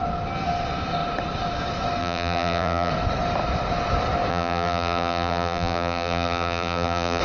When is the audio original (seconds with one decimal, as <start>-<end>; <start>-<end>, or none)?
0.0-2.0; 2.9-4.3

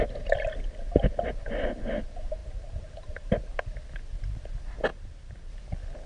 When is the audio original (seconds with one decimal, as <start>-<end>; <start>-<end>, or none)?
0.0-2.4; 3.3-4.9; 5.5-6.1

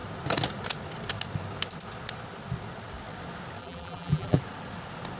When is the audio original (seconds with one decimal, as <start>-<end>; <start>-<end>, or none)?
0.0-3.6; 4.4-5.2